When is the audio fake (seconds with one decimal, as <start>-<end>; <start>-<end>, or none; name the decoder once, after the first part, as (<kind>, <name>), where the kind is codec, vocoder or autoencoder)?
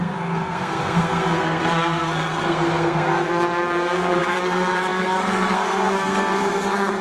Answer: 0.0-7.0 (codec, SNAC)